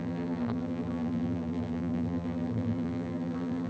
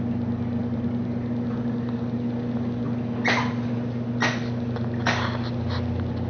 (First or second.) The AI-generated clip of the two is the first